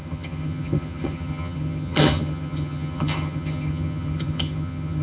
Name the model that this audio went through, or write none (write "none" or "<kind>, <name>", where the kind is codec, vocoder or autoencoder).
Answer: vocoder, HiFi-GAN